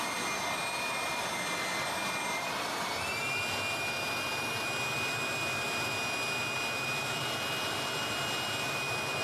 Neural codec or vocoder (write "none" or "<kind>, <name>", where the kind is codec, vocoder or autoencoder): none